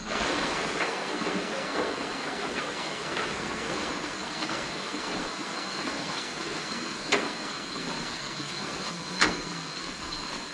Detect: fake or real fake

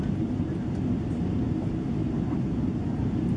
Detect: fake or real real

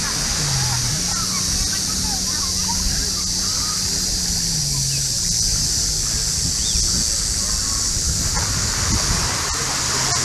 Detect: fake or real real